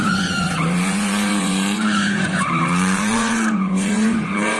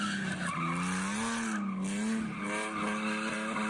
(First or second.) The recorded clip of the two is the second